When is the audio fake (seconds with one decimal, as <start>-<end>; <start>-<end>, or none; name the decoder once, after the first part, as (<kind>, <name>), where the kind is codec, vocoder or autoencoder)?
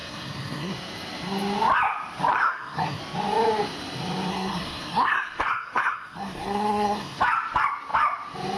0.0-0.7 (codec, SNAC); 2.3-3.0; 4.3-7.2